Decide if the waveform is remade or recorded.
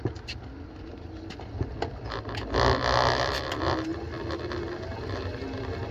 recorded